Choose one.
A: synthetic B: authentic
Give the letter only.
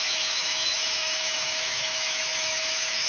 A